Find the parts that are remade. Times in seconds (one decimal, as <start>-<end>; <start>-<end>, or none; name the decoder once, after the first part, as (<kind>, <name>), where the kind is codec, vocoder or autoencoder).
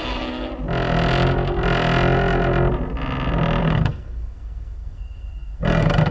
0.0-0.5 (codec, SNAC); 3.6-6.1